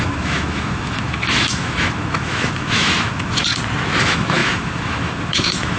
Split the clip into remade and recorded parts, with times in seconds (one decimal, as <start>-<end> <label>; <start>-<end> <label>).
0.0-3.5 remade; 3.5-4.0 recorded; 4.0-5.8 remade